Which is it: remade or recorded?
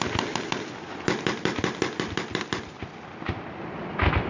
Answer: recorded